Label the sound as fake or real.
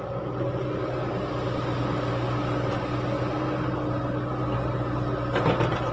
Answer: real